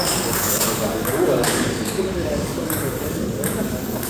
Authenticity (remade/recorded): remade